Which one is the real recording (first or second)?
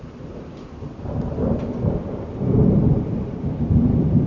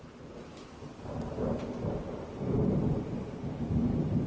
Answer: second